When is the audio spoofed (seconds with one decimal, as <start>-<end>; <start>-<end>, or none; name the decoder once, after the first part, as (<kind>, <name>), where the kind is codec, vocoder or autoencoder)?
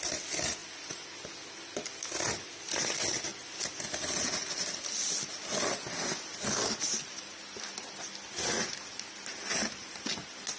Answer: none